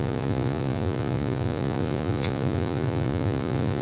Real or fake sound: fake